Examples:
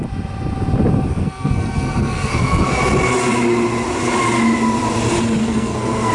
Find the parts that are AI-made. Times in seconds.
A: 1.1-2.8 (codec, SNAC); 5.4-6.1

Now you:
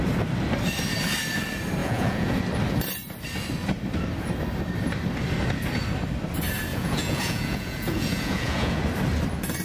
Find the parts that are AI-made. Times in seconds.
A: 1.8-2.4 (vocoder, Vocos); 6.7-8.8

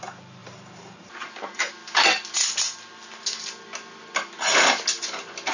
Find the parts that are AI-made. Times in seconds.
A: 0.4-1.7 (vocoder, BigVGAN v2)